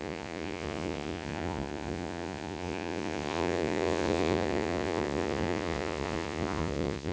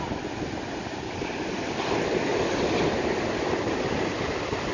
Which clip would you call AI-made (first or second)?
first